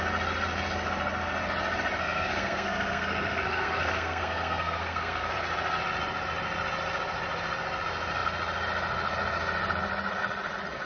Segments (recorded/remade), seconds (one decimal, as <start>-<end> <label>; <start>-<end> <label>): 0.0-2.0 recorded; 2.0-5.3 remade; 5.3-10.9 recorded

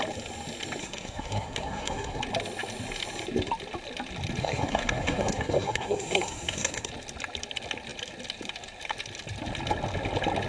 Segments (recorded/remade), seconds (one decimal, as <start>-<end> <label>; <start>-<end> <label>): 0.0-0.8 recorded; 0.8-2.2 remade; 2.2-4.4 recorded; 4.4-6.9 remade; 6.9-10.5 recorded

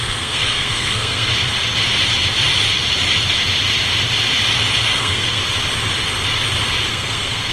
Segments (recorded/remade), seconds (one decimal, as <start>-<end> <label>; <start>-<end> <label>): 0.0-1.3 remade; 1.3-4.9 recorded; 4.9-5.4 remade; 5.4-6.9 recorded; 6.9-7.5 remade

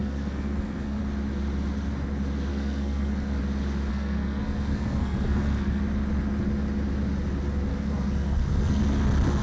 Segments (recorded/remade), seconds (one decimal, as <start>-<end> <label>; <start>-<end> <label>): 0.0-1.0 remade; 1.0-2.5 recorded; 2.5-3.4 remade; 3.4-3.9 recorded; 3.9-5.8 remade; 5.8-7.7 recorded; 7.7-8.8 remade; 8.8-9.4 recorded

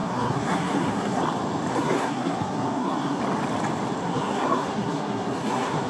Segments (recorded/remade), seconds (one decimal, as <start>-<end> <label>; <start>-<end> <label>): 0.0-1.2 remade; 1.2-1.7 recorded; 1.7-3.2 remade; 3.2-4.0 recorded; 4.0-5.9 remade

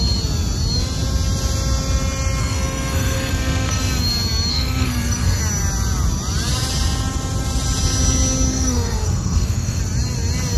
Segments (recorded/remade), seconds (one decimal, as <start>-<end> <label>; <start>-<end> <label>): 0.0-2.4 recorded; 2.4-3.8 remade; 3.8-4.5 recorded; 4.5-5.4 remade; 5.4-8.5 recorded; 8.5-9.8 remade; 9.8-10.6 recorded